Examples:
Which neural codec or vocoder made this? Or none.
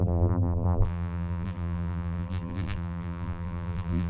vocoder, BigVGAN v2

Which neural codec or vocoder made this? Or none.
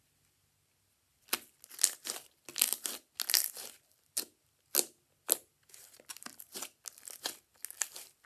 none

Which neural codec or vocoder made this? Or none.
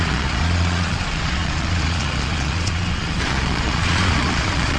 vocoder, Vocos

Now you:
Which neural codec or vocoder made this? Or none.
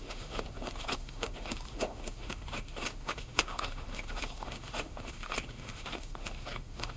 autoencoder, DAC-VAE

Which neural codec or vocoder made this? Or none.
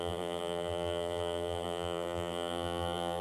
vocoder, BigVGAN v2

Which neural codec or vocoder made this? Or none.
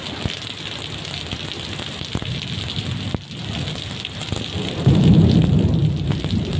none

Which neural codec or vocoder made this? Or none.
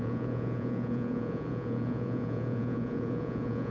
vocoder, Vocos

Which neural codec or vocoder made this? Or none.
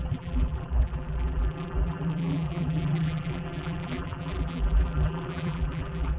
vocoder, BigVGAN v2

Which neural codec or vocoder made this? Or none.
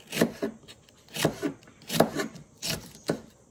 vocoder, BigVGAN v2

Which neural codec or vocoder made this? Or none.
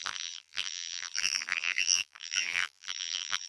vocoder, BigVGAN v2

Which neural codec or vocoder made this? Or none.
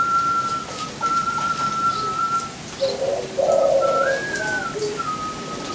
none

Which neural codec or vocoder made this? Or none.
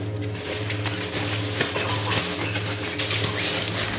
none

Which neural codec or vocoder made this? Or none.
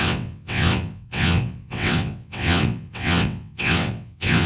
vocoder, WaveNeXt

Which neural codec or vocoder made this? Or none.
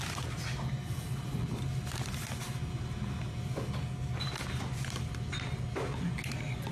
none